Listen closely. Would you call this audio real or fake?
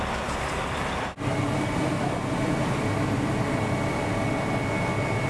real